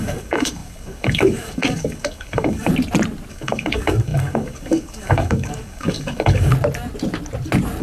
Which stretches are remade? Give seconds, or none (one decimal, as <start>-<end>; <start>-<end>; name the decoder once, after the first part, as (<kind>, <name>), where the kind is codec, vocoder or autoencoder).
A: 0.0-2.7 (codec, DAC); 3.3-6.5